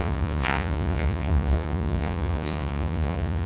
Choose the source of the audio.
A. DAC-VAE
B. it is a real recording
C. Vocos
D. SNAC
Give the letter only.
C